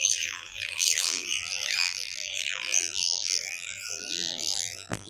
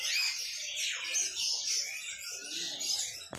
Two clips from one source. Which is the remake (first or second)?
first